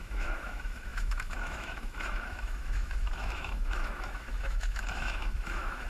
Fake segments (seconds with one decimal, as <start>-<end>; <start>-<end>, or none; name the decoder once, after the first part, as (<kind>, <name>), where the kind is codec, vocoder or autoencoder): 0.0-5.9 (autoencoder, DAC-VAE)

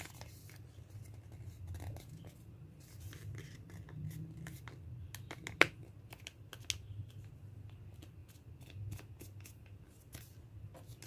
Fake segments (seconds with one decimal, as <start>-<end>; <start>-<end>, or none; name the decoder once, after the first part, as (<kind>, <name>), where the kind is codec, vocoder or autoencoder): none